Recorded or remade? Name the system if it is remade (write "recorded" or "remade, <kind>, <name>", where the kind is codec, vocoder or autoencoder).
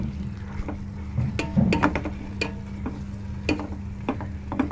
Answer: recorded